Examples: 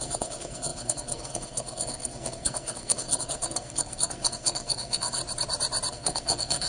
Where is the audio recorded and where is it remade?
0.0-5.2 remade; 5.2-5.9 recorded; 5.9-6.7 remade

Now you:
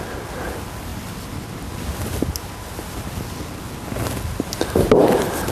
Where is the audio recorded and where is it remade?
0.0-5.5 recorded

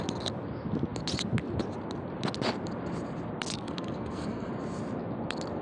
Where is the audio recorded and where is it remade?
0.0-3.5 recorded; 3.5-4.5 remade; 4.5-5.6 recorded

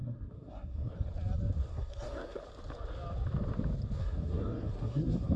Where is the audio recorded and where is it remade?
0.0-0.9 remade; 0.9-1.7 recorded; 1.7-2.4 remade; 2.4-4.0 recorded; 4.0-5.4 remade

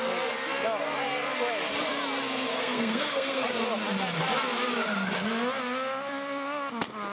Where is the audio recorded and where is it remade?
0.0-2.5 recorded; 2.5-3.5 remade; 3.5-7.1 recorded

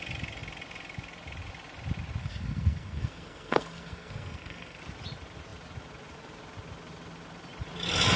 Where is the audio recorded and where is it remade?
0.0-2.2 recorded; 2.2-4.8 remade; 4.8-8.2 recorded

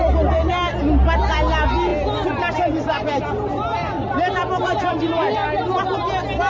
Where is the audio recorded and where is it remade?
0.0-6.5 recorded